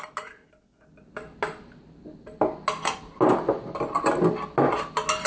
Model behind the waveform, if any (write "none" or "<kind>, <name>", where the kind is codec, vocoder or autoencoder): none